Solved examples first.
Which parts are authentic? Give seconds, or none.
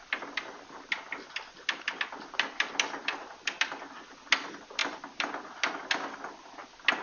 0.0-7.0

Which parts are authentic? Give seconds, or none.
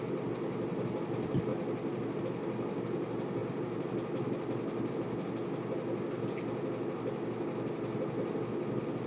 0.0-9.1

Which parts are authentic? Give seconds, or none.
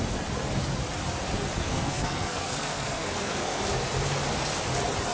0.0-1.6; 3.6-5.1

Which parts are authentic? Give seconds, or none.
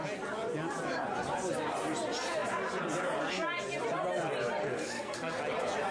0.0-4.6; 5.4-5.9